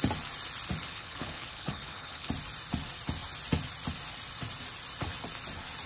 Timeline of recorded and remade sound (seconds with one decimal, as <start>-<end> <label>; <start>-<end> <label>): 0.0-0.8 recorded; 0.8-2.3 remade; 2.3-5.9 recorded